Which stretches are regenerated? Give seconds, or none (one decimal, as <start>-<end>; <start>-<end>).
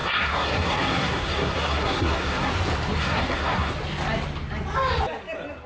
0.0-2.5; 3.0-3.7